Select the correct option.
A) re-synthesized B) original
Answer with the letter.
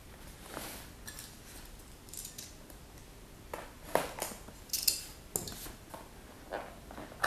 B